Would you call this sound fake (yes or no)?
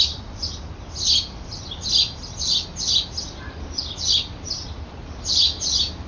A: no